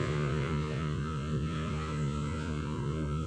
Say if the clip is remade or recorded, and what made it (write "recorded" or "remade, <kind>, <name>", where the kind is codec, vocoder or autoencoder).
remade, vocoder, Vocos